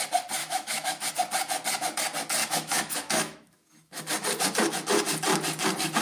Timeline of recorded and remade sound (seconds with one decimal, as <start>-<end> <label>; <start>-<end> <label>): 0.0-0.4 recorded; 0.4-1.1 remade; 1.1-2.4 recorded; 2.4-4.0 remade; 4.0-6.0 recorded